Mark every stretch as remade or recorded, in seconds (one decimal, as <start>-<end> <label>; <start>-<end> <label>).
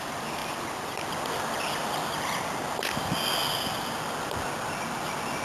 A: 0.0-0.4 recorded; 0.4-2.6 remade; 2.6-3.4 recorded; 3.4-4.7 remade; 4.7-5.4 recorded